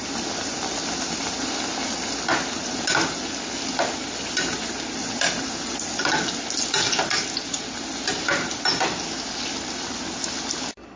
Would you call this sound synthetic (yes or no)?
no